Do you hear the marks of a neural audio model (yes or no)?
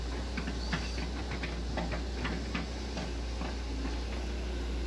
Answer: no